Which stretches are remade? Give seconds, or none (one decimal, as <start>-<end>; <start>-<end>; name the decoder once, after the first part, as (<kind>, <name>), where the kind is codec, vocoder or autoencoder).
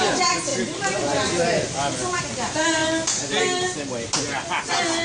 none